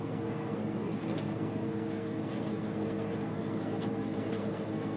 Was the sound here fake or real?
fake